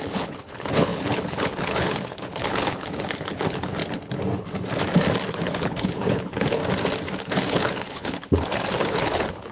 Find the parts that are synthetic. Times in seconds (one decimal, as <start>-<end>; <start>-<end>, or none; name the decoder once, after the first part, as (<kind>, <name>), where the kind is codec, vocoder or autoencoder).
0.0-3.8 (codec, HILCodec); 5.3-6.6; 7.2-9.5